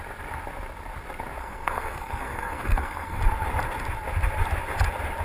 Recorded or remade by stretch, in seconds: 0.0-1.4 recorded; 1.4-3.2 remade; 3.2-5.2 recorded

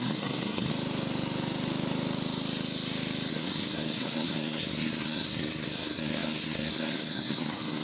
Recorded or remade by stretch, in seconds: 0.0-0.7 remade; 0.7-3.3 recorded; 3.3-7.8 remade